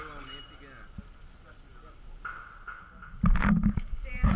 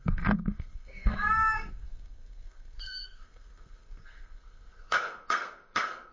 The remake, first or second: second